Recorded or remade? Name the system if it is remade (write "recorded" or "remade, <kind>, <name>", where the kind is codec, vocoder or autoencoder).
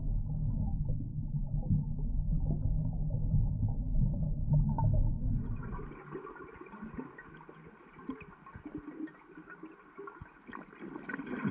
recorded